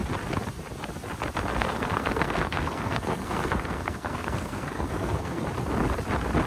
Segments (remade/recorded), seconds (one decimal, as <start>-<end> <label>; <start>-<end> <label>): 0.0-1.5 recorded; 1.5-5.4 remade; 5.4-6.5 recorded